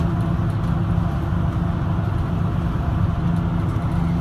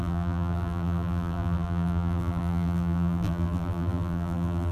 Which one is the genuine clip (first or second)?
first